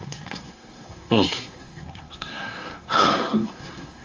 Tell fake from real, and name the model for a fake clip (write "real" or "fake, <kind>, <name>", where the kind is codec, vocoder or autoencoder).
fake, codec, SNAC